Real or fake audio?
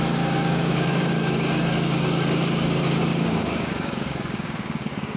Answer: fake